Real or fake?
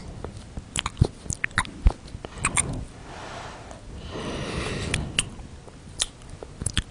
real